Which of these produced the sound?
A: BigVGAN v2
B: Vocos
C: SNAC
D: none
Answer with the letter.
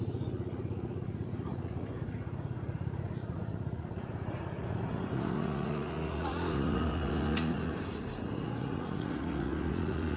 B